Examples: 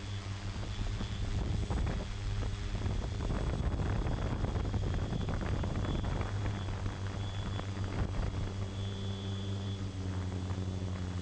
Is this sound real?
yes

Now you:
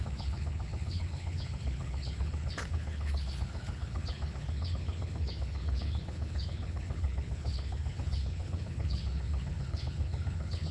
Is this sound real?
no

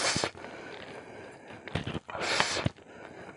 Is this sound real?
yes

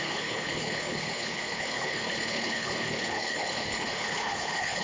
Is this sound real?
no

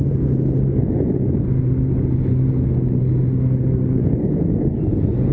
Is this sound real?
yes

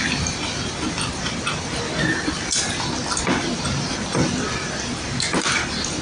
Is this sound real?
yes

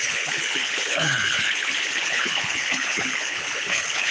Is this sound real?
no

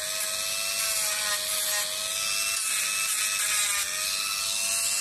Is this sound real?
yes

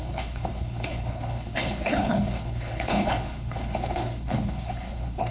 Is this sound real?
no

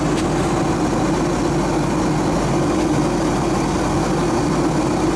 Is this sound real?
yes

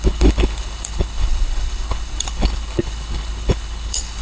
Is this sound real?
no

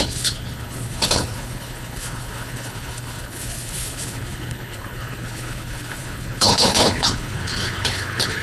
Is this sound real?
no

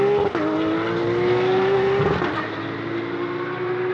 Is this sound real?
yes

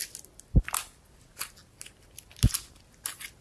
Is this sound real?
yes